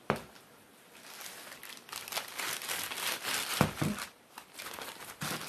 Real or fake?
real